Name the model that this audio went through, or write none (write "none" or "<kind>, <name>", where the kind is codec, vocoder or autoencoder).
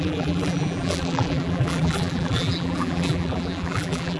vocoder, BigVGAN v2